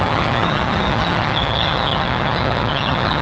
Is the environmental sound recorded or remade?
remade